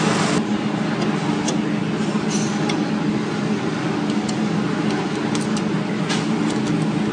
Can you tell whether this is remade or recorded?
recorded